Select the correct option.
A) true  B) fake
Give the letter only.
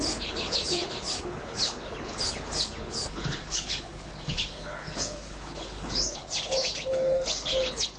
B